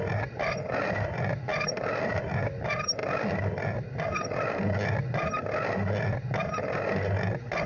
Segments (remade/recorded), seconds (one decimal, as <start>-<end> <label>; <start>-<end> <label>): 0.0-7.7 recorded